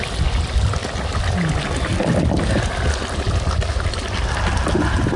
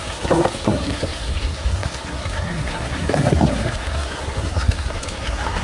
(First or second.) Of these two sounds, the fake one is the second